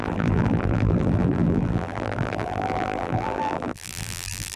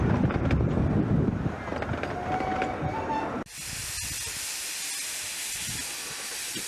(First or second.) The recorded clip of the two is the second